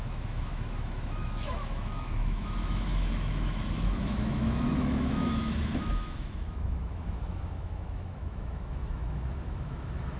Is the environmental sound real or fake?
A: fake